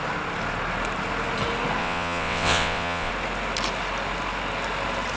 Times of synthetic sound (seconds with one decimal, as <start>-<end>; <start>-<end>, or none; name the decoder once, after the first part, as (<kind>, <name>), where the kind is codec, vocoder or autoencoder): 1.8-3.1 (vocoder, WaveNeXt)